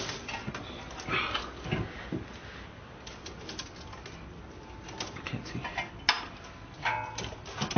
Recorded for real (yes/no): yes